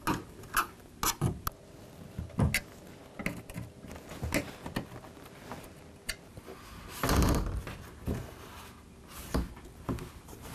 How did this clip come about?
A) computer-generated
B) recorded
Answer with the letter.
B